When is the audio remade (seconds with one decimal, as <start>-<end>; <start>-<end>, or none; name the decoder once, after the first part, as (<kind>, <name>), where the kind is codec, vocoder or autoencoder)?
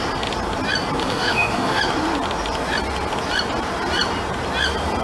1.0-1.8 (autoencoder, DAC-VAE)